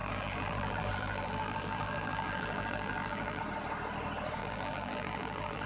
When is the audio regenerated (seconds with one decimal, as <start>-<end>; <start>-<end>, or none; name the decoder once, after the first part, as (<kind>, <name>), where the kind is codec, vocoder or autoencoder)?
0.0-3.4 (vocoder, BigVGAN v2); 4.4-5.7